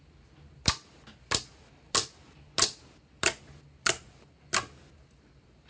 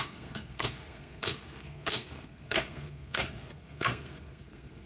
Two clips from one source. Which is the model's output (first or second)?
second